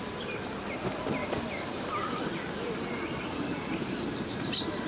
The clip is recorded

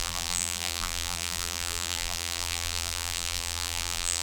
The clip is remade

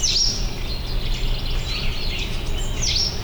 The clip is recorded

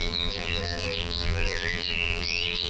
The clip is remade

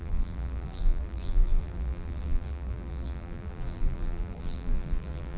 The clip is remade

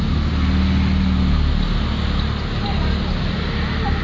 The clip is recorded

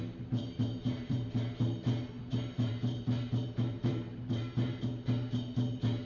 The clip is remade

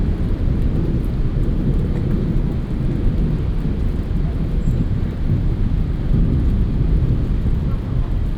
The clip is remade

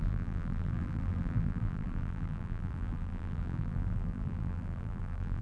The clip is remade